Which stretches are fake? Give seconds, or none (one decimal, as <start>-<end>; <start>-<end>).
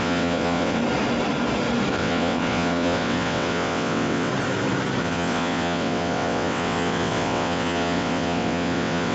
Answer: 0.0-0.8; 1.9-4.3; 5.0-9.1